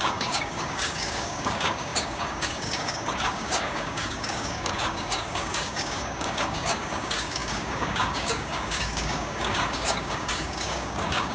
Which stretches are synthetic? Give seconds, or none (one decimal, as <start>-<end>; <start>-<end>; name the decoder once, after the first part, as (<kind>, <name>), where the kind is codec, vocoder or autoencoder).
0.0-11.3 (codec, DAC)

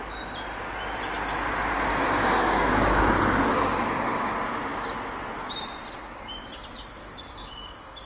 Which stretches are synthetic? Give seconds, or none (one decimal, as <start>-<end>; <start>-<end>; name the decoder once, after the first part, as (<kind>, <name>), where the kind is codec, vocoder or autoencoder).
1.9-3.0 (codec, DAC); 3.5-4.2; 7.0-7.5

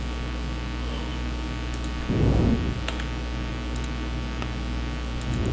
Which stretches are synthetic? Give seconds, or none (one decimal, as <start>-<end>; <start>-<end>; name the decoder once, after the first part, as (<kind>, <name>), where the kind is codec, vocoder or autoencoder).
none

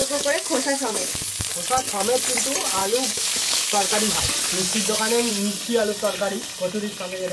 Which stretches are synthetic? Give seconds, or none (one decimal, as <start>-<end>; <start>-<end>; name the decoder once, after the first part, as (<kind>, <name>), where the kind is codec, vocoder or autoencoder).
0.0-1.5 (codec, DAC); 2.8-4.2; 4.7-5.3

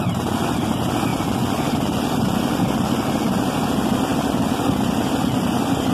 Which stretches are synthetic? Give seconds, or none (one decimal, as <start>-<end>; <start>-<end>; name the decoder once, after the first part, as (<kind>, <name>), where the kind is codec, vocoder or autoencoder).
none